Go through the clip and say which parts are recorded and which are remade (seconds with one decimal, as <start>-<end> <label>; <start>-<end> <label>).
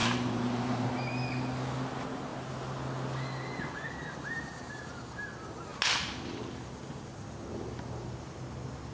0.0-0.9 remade; 0.9-7.5 recorded; 7.5-8.3 remade; 8.3-8.9 recorded